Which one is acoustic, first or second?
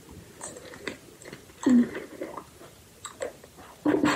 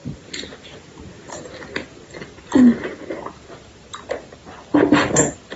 second